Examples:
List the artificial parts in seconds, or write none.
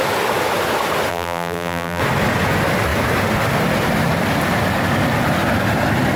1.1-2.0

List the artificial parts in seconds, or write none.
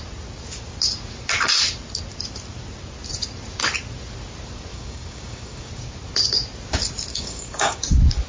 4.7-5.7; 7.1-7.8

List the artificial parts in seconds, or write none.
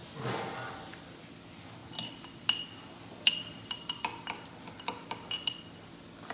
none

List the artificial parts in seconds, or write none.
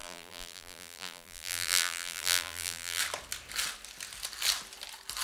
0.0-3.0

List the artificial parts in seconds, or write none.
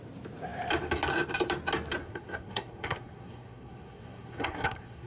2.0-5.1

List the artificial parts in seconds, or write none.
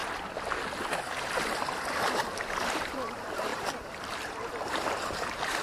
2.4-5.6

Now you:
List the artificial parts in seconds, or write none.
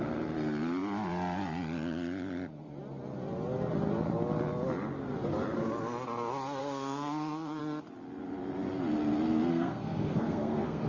6.6-7.6; 9.5-10.9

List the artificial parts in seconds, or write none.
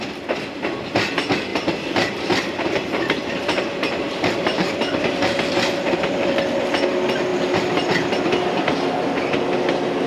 1.5-6.4